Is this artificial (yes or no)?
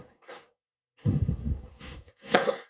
yes